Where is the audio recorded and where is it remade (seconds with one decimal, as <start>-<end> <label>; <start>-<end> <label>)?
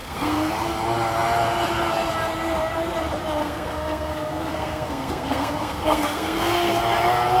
0.0-0.5 remade; 0.5-3.4 recorded; 3.4-6.8 remade; 6.8-7.4 recorded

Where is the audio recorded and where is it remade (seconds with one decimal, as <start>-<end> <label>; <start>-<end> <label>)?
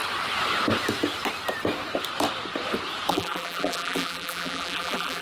0.0-3.1 recorded; 3.1-5.2 remade